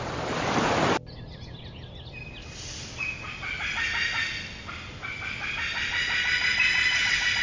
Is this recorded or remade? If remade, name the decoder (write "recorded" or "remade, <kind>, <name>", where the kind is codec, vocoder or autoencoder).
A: recorded